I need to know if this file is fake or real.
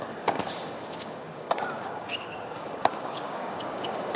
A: fake